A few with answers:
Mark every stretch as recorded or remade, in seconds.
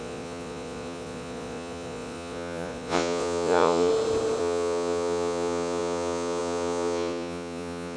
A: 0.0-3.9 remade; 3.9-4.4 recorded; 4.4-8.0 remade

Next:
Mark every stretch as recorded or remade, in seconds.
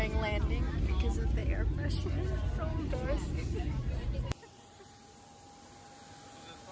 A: 0.0-2.7 recorded; 2.7-5.0 remade; 5.0-6.7 recorded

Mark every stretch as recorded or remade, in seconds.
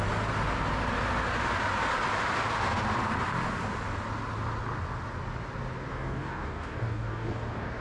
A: 0.0-5.9 recorded; 5.9-7.8 remade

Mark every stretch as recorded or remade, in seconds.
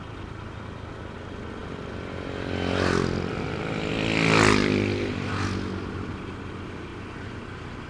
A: 0.0-6.9 recorded; 6.9-7.4 remade; 7.4-7.9 recorded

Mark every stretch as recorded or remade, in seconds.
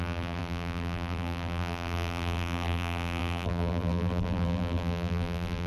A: 0.0-5.7 remade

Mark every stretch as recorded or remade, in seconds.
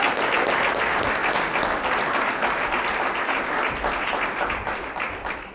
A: 0.0-5.5 recorded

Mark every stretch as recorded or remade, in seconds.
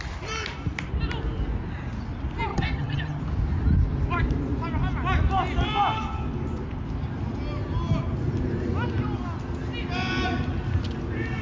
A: 0.0-2.5 recorded; 2.5-3.2 remade; 3.2-11.4 recorded